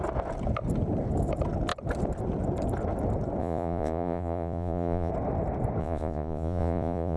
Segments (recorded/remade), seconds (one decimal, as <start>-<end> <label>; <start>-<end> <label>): 0.0-3.4 recorded; 3.4-5.1 remade; 5.1-5.8 recorded; 5.8-7.2 remade